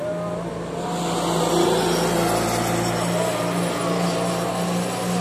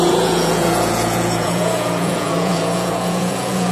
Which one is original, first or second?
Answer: first